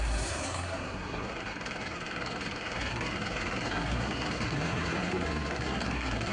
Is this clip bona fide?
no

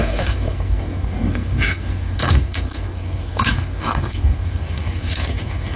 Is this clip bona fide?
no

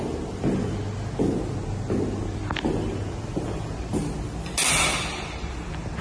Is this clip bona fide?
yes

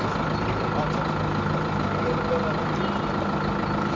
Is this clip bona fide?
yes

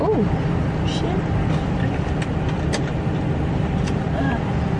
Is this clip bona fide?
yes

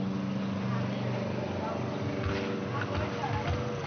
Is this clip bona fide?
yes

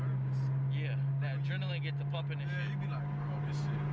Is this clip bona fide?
yes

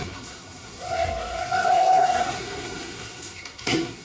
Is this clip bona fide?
no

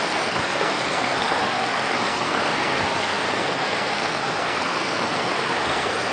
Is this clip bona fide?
no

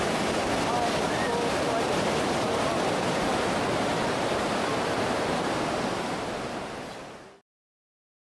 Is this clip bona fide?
yes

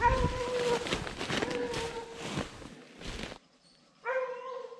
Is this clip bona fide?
yes